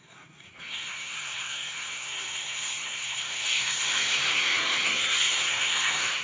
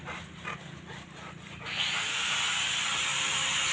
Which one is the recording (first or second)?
second